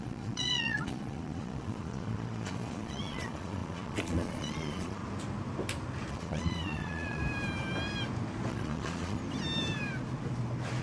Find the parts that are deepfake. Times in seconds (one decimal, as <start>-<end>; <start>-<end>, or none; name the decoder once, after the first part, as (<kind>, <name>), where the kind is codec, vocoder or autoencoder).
0.0-5.0 (vocoder, Vocos); 6.1-7.2; 8.5-9.2